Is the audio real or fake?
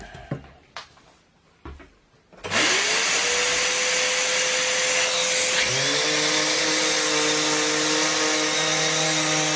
real